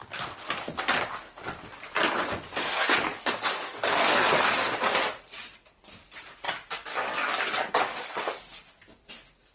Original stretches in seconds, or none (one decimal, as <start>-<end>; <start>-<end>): 0.0-3.1; 4.5-6.9; 8.4-9.5